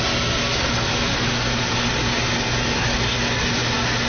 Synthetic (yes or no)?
no